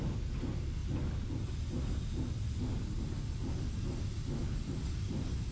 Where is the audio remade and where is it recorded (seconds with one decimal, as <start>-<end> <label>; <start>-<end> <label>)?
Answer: 0.0-0.8 recorded; 0.8-1.5 remade; 1.5-5.5 recorded